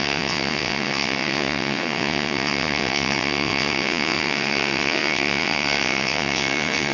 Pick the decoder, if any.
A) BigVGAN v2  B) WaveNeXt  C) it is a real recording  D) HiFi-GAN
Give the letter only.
B